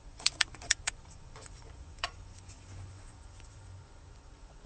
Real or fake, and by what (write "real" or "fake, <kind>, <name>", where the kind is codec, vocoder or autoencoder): fake, vocoder, Vocos